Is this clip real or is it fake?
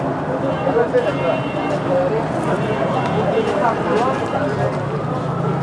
real